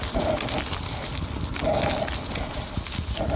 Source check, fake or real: real